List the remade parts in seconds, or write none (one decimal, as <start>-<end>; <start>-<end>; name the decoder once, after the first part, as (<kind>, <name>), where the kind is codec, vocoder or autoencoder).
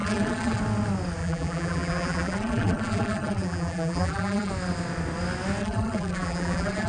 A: 0.0-0.6 (vocoder, BigVGAN v2); 1.2-4.5; 5.6-6.9